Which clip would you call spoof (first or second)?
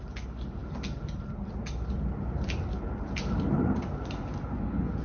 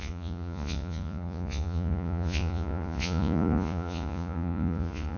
second